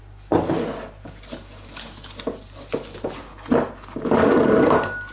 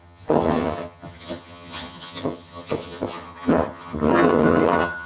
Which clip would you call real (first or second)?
first